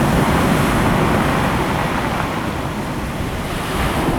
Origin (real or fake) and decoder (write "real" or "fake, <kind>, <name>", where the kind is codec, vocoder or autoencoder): real